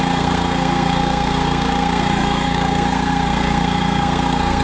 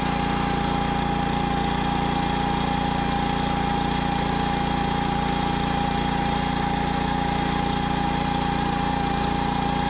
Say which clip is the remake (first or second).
first